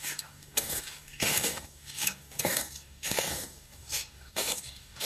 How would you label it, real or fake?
fake